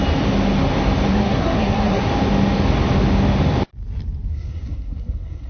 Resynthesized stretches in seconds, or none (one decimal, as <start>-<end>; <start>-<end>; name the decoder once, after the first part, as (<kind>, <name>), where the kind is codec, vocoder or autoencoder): 1.1-2.0 (codec, SNAC); 4.3-5.5